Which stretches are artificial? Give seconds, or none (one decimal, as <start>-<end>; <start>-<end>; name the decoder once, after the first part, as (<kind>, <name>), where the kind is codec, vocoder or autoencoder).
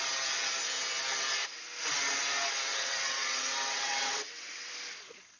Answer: 2.7-4.7 (vocoder, WaveNeXt)